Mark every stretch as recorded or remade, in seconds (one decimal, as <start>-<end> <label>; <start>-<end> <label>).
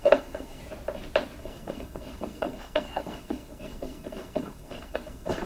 0.0-0.6 remade; 0.6-1.4 recorded; 1.4-5.5 remade